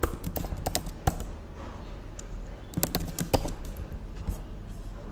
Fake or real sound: real